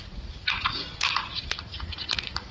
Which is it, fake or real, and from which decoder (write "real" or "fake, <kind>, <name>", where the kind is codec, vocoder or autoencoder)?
fake, vocoder, Vocos